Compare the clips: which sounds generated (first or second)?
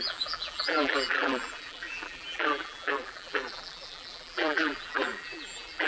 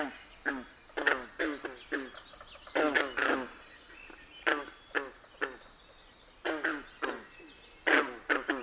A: first